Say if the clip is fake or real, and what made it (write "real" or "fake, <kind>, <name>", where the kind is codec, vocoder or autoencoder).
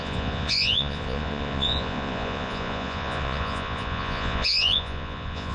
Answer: fake, vocoder, Vocos